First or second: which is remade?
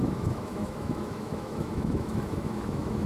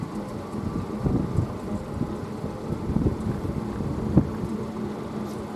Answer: first